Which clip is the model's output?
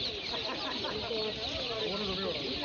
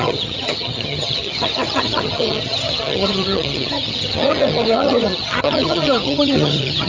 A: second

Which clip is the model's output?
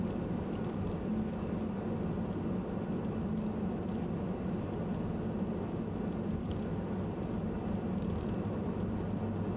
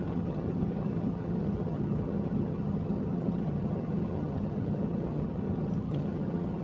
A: second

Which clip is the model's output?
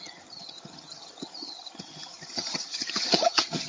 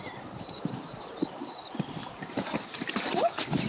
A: first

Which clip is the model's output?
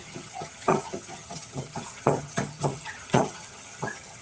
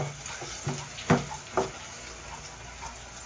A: first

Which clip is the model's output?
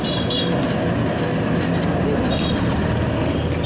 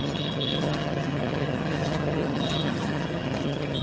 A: second